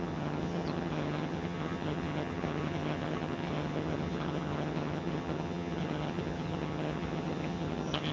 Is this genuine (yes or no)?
no